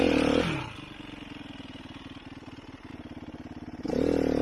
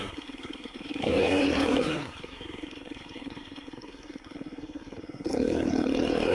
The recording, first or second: first